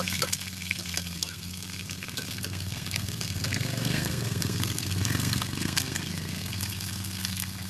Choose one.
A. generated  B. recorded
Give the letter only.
A